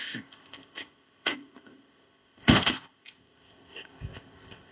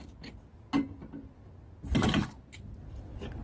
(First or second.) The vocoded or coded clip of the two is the first